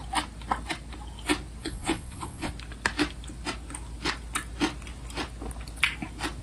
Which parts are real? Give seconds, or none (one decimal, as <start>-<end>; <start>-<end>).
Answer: 0.0-1.6; 2.5-6.4